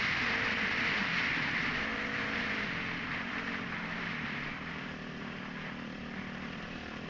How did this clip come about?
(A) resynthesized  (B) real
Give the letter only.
A